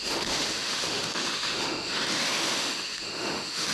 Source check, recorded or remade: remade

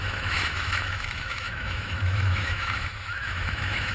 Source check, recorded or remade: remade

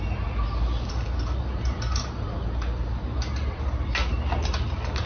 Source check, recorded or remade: recorded